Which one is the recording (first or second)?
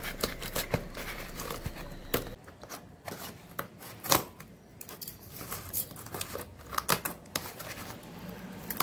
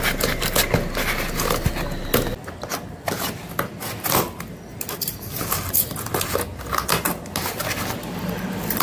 second